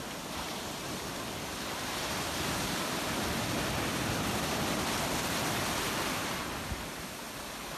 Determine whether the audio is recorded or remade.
recorded